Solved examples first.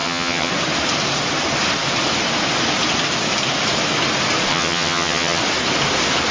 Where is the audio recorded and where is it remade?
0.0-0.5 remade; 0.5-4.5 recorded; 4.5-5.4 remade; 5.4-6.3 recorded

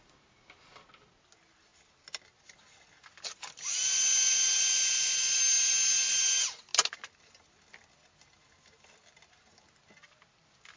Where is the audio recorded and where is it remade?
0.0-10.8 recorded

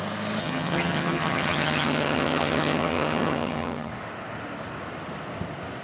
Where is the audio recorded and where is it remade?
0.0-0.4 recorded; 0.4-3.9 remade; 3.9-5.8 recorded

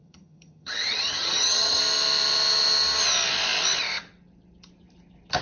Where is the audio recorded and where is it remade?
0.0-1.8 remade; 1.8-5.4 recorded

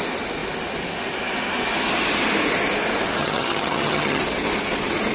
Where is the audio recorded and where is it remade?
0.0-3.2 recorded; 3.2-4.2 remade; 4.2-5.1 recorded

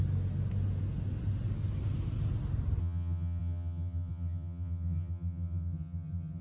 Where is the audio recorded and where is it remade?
0.0-2.8 recorded; 2.8-6.4 remade

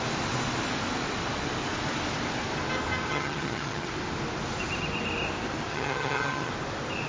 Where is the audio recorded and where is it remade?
0.0-3.1 recorded; 3.1-3.9 remade; 3.9-5.7 recorded; 5.7-6.5 remade; 6.5-7.1 recorded

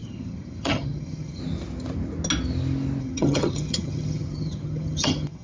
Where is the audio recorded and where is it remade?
0.0-1.4 remade; 1.4-3.0 recorded; 3.0-5.4 remade